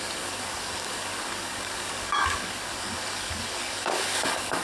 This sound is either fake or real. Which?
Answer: fake